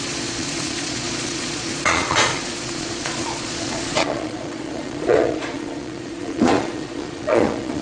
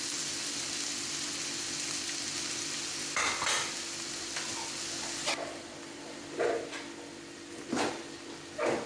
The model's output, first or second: first